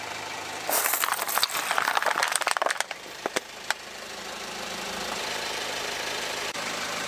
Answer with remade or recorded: remade